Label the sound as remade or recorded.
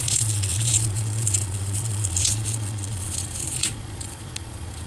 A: remade